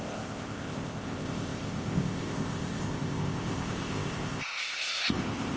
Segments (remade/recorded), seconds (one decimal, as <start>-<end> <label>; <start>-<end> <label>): 0.0-5.6 remade